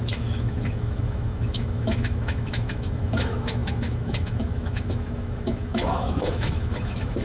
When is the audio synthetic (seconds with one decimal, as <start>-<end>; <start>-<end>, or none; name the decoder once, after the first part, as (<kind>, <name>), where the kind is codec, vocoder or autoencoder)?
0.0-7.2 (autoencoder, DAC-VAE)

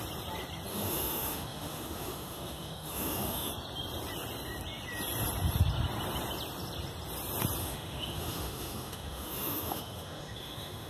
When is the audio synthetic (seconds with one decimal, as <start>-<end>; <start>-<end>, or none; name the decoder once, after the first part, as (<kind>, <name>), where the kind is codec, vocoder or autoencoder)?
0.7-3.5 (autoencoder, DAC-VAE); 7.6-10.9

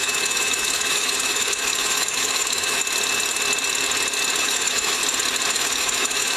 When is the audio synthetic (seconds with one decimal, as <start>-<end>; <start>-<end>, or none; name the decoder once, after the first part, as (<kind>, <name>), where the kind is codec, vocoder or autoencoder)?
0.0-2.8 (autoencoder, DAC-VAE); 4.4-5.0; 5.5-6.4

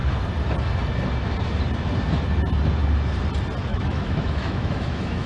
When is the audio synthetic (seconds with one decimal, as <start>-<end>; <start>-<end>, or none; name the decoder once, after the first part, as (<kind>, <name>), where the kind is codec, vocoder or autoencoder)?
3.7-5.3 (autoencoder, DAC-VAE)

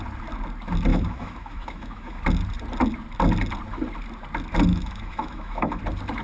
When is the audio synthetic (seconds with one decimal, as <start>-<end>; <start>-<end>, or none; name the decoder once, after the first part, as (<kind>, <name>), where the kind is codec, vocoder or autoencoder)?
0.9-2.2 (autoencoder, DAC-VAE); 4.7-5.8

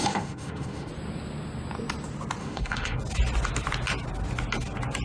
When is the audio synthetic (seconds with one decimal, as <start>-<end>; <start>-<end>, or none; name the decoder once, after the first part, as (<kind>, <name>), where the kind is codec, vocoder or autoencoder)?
0.0-0.9 (autoencoder, DAC-VAE); 2.4-3.0